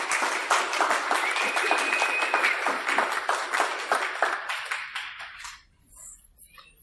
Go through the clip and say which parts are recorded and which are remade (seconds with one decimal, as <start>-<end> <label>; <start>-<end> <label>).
0.0-6.8 recorded